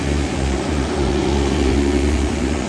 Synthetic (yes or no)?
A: yes